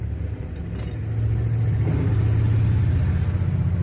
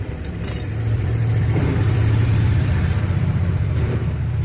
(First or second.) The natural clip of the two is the first